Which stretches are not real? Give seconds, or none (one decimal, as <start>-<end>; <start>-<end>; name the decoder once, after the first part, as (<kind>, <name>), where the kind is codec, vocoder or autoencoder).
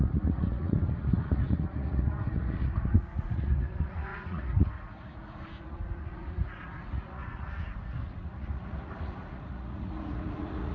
0.0-10.7 (vocoder, Vocos)